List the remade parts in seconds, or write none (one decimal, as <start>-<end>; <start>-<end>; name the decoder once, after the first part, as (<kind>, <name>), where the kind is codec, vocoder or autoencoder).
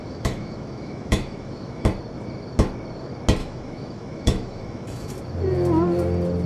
0.0-1.9 (autoencoder, DAC-VAE); 3.4-5.1